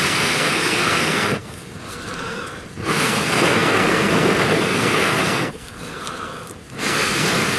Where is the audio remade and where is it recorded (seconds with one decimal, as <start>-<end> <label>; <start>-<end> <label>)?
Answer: 0.0-7.6 remade